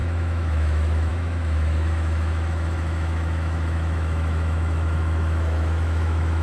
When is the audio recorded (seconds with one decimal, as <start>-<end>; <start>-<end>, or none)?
none